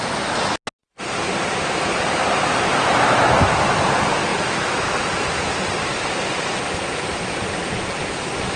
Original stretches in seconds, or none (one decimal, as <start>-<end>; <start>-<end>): 0.0-8.6